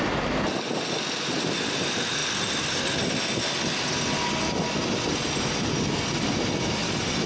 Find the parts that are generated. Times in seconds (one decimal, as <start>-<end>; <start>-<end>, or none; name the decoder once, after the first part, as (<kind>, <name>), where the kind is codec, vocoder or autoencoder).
none